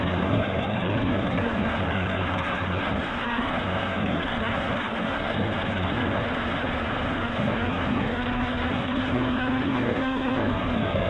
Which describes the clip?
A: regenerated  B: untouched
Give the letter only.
A